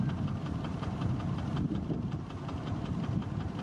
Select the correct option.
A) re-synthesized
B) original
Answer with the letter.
A